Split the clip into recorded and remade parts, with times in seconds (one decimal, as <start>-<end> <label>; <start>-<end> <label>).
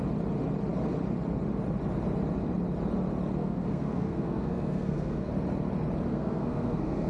0.0-3.4 recorded; 3.4-5.3 remade; 5.3-6.1 recorded; 6.1-7.1 remade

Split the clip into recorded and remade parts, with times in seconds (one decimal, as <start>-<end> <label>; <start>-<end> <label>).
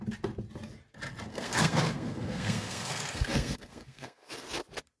0.0-1.3 recorded; 1.3-4.3 remade; 4.3-5.0 recorded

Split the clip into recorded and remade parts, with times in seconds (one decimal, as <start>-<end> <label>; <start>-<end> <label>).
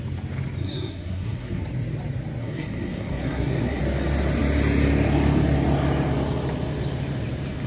0.0-0.6 recorded; 0.6-1.6 remade; 1.6-2.4 recorded; 2.4-3.8 remade; 3.8-7.7 recorded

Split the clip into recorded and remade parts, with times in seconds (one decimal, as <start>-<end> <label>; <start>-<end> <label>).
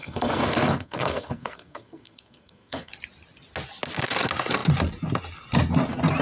0.0-2.9 remade; 2.9-6.2 recorded